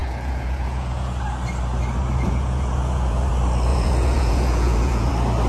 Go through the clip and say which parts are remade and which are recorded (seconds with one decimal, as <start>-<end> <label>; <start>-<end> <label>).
0.0-1.2 remade; 1.2-2.0 recorded; 2.0-3.3 remade; 3.3-3.7 recorded; 3.7-5.1 remade; 5.1-5.5 recorded